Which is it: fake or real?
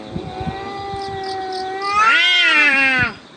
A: real